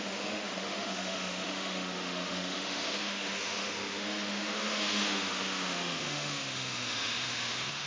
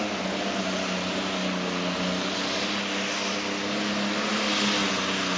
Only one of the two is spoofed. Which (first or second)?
first